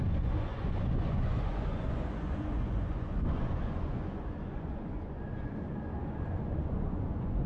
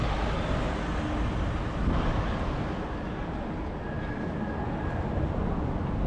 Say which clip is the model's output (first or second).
first